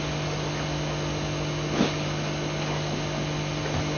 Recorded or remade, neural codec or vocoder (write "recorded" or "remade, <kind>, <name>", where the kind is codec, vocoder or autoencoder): recorded